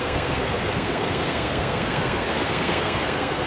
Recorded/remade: remade